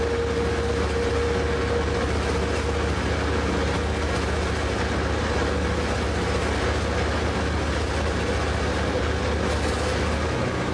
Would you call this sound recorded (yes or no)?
yes